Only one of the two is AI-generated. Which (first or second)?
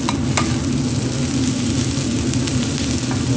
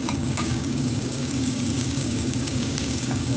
second